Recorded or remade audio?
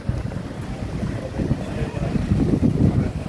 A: recorded